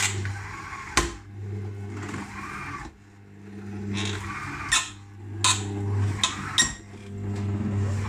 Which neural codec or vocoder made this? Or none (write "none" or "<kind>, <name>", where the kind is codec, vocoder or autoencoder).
none